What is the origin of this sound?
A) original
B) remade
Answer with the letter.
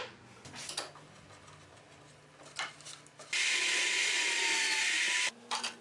A